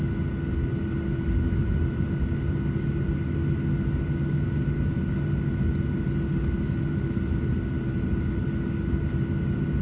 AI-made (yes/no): no